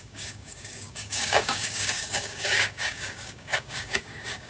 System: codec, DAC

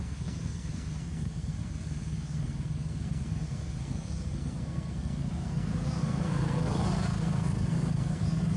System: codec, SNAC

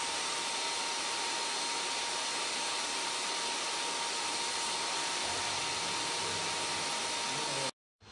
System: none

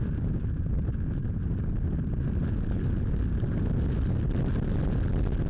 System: none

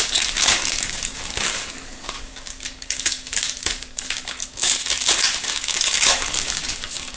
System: codec, DAC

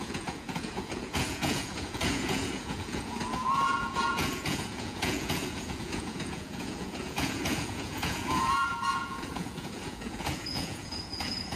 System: vocoder, Vocos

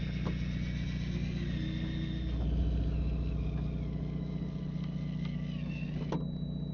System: none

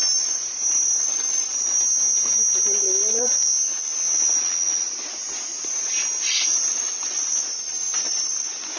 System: none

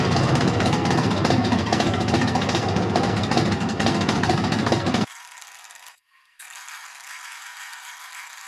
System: codec, SNAC